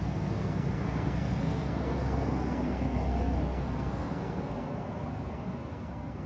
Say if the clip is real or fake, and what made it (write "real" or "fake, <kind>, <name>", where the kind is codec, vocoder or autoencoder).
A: fake, codec, SNAC